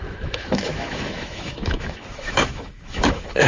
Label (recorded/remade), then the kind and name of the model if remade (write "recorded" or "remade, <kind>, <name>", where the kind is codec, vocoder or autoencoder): remade, autoencoder, DAC-VAE